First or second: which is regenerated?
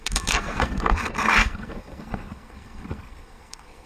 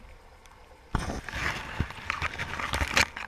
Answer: first